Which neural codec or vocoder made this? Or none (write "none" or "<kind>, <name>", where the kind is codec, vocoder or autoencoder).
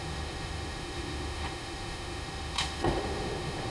autoencoder, DAC-VAE